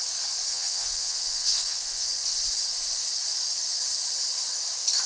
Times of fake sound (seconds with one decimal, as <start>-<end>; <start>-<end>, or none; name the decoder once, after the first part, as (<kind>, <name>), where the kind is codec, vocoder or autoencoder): 0.5-2.1 (vocoder, WaveNeXt)